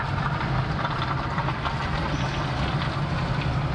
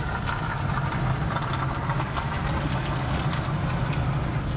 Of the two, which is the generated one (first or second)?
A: first